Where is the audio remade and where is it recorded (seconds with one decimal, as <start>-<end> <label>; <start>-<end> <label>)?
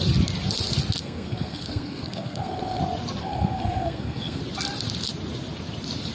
0.0-1.0 recorded; 1.0-2.8 remade; 2.8-3.2 recorded; 3.2-4.4 remade; 4.4-6.1 recorded